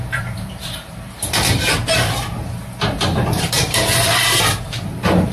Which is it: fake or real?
fake